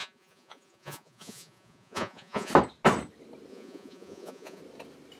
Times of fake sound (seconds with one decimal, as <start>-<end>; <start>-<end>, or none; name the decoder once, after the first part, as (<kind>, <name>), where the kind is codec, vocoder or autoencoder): 0.0-2.5 (vocoder, Vocos); 3.5-4.6